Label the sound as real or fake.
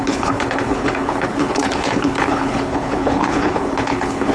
fake